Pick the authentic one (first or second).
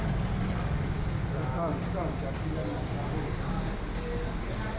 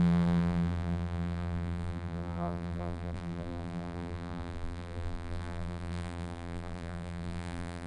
first